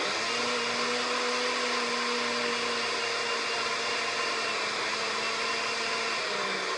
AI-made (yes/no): no